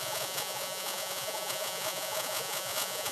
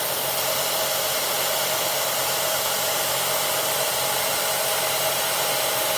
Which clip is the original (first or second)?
second